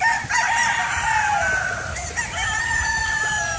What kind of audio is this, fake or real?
fake